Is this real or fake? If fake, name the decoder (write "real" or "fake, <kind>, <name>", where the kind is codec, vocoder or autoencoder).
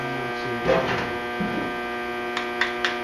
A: real